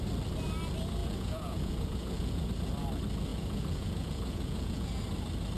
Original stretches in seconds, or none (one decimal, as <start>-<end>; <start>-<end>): 0.0-1.0; 2.5-3.3; 5.0-5.6

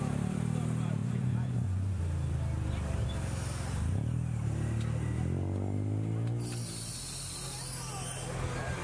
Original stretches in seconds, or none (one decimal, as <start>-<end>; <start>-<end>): 0.0-1.0; 2.0-8.8

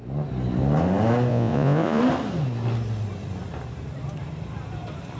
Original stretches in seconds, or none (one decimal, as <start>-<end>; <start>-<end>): 0.0-1.3; 2.0-5.2

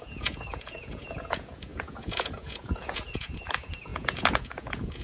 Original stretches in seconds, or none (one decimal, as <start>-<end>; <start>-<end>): none